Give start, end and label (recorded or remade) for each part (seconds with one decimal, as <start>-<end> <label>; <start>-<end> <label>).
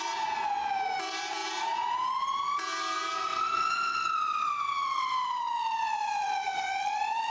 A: 0.0-3.3 recorded; 3.3-7.3 remade